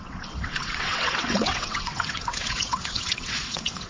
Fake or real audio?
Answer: fake